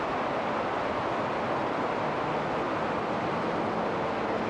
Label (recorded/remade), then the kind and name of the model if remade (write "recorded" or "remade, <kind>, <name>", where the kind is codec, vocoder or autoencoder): recorded